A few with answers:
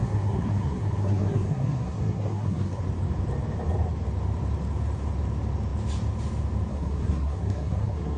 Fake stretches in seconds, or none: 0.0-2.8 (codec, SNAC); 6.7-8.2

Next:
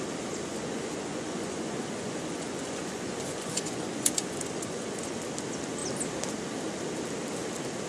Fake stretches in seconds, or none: 0.5-5.2 (vocoder, Vocos)

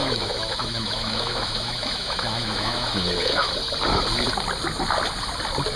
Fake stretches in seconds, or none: 0.0-3.5 (autoencoder, DAC-VAE)

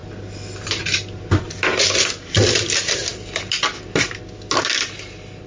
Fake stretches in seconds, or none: none

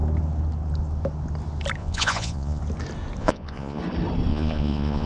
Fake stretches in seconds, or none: 1.8-2.6 (vocoder, Vocos); 3.2-3.8; 4.3-5.1

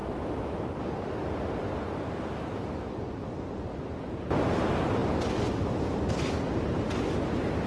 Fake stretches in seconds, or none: 0.0-3.2 (vocoder, BigVGAN v2)

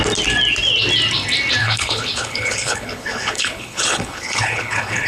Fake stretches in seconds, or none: 1.6-5.1 (codec, HILCodec)